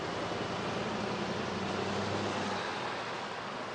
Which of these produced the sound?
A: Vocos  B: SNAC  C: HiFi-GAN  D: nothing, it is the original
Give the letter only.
D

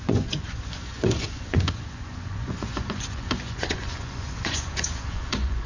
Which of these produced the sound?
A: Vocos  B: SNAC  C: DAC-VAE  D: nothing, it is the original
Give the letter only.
A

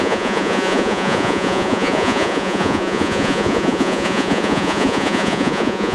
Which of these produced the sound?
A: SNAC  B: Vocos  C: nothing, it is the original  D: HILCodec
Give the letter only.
B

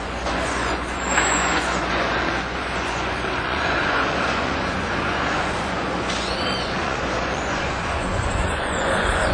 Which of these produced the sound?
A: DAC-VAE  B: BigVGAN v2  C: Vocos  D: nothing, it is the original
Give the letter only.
C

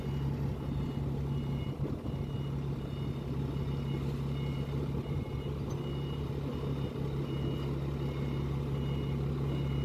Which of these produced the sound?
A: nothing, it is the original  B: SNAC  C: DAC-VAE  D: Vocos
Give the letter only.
A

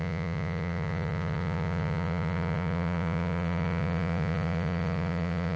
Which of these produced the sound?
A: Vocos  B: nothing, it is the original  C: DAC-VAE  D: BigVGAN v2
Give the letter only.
A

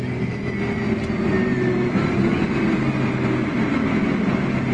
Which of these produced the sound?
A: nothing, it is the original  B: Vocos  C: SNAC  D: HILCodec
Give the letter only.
A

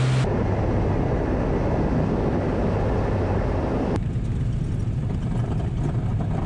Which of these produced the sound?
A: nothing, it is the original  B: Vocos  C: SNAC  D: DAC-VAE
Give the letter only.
A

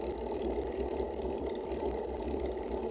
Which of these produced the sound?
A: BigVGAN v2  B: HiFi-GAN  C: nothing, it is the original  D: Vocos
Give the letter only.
C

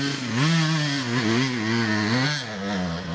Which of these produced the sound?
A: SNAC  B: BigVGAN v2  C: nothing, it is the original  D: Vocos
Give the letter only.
C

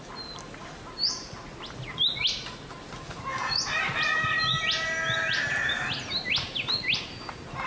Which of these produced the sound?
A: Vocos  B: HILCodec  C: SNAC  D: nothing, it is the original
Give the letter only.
D